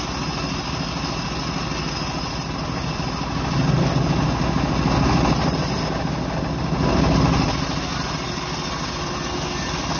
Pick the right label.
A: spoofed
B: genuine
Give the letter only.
B